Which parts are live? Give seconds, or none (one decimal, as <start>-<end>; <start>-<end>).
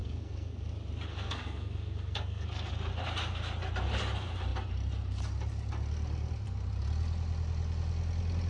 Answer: 0.7-1.1; 2.7-8.5